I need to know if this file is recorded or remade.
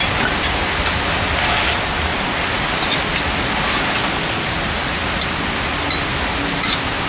recorded